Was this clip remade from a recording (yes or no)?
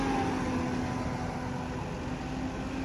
no